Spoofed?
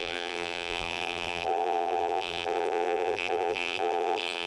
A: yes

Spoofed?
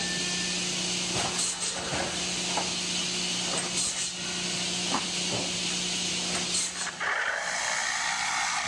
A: no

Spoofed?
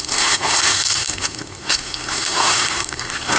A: yes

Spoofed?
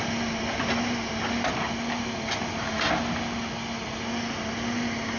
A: no